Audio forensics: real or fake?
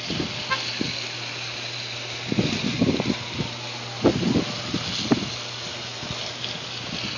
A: real